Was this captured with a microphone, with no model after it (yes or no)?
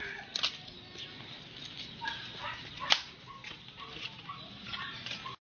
yes